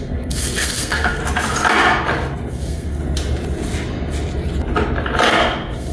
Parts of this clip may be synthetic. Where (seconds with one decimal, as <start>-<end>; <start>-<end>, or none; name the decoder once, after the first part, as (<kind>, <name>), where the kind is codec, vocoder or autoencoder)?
0.0-1.2 (codec, SNAC); 2.5-3.0; 5.3-5.9

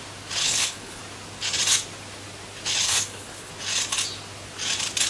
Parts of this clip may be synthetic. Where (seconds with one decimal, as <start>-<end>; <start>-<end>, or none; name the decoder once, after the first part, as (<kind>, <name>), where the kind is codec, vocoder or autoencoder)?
0.4-1.0 (codec, HILCodec); 2.7-3.5

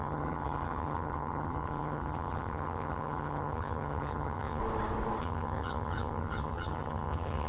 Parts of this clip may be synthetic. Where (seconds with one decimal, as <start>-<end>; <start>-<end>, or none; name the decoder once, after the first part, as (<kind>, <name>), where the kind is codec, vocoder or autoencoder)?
0.0-4.6 (vocoder, HiFi-GAN); 5.2-7.5

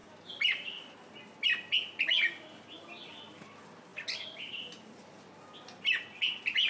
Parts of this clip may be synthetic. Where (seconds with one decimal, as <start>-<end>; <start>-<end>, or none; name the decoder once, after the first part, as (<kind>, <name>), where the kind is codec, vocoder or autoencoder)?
0.0-1.1 (vocoder, BigVGAN v2); 3.9-4.5

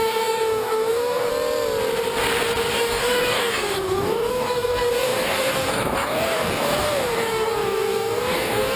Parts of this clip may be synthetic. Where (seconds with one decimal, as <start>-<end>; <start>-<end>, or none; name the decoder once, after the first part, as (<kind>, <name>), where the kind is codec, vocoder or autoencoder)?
0.0-1.3 (codec, DAC); 2.7-8.8

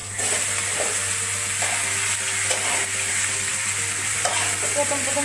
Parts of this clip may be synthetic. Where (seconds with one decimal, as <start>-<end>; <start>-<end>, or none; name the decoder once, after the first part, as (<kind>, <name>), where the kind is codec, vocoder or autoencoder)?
3.5-4.3 (vocoder, BigVGAN v2)

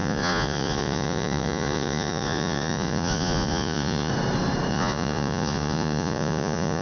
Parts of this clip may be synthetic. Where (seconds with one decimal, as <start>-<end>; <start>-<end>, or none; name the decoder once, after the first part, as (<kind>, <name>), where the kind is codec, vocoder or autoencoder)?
0.0-4.1 (vocoder, Vocos); 4.7-6.8

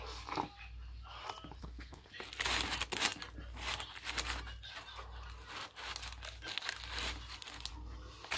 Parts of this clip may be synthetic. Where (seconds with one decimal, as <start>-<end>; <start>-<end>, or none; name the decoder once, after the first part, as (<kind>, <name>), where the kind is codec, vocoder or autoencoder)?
1.6-2.1 (codec, SNAC)